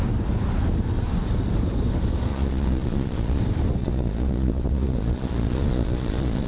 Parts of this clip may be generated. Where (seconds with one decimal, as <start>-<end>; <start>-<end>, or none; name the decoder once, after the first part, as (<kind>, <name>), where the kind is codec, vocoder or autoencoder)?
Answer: 2.3-3.4 (vocoder, Vocos); 3.8-6.5

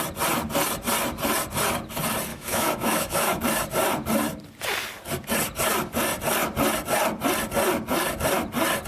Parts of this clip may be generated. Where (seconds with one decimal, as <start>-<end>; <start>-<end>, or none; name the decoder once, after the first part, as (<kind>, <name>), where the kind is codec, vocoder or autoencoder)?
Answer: 2.3-3.4 (autoencoder, DAC-VAE)

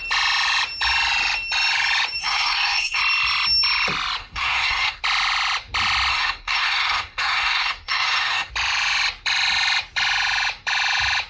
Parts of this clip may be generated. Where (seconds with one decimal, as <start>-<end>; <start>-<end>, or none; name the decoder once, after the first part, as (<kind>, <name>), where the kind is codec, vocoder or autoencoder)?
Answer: 2.2-3.0 (codec, SNAC); 4.2-5.0; 6.1-8.5

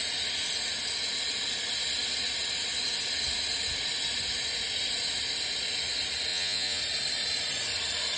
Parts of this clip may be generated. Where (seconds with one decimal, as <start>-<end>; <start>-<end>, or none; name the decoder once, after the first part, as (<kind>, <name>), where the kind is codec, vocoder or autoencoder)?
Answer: 6.3-6.8 (vocoder, Vocos)